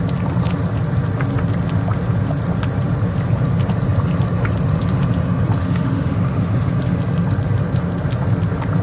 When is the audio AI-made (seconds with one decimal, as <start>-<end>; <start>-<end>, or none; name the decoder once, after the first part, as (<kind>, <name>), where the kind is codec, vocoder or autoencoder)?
5.6-6.7 (autoencoder, DAC-VAE)